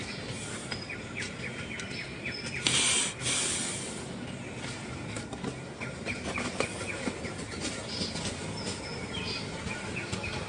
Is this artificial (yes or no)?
no